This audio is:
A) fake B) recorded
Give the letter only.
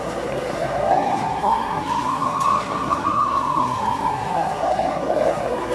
A